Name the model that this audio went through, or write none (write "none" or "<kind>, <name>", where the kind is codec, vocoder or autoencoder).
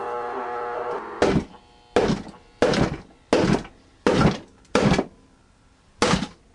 none